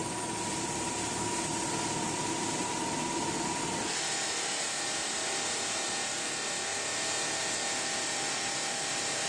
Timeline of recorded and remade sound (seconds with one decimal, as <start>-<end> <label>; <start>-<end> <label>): 0.0-9.3 recorded